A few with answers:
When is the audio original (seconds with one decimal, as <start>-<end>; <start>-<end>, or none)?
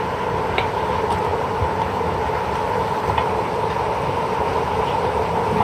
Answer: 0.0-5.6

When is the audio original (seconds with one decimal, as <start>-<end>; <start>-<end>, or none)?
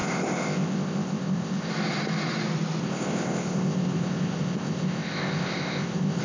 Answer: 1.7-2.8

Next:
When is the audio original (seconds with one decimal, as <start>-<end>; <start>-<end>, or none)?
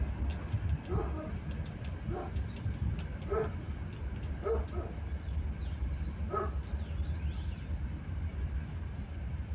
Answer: 0.0-9.5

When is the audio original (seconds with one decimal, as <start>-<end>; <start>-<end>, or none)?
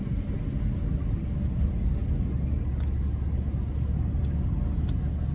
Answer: 0.0-5.3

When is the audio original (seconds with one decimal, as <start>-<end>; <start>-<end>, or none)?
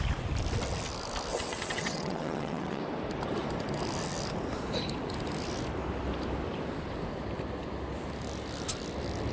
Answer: 0.0-1.3; 2.8-9.3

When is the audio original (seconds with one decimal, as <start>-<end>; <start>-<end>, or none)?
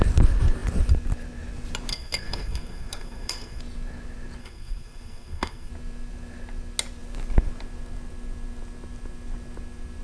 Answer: 0.0-1.9; 3.6-4.4; 5.7-10.0